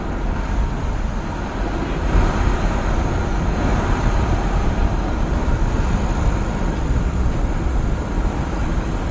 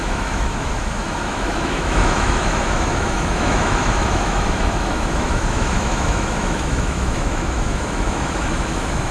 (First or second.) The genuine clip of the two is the first